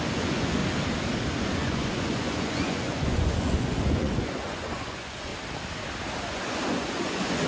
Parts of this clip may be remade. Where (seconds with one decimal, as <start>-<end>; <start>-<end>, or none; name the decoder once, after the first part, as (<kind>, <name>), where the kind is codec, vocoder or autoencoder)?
0.0-0.6 (vocoder, Vocos); 1.4-5.3; 6.3-7.5